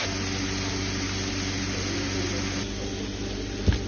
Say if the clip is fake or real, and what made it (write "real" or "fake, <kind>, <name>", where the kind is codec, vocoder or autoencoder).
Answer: real